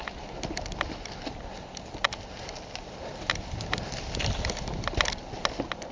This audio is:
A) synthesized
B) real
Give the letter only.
B